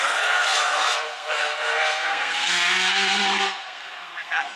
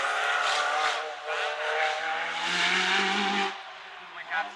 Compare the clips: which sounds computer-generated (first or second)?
first